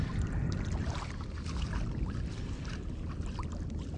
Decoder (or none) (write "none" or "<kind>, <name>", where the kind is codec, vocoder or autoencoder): none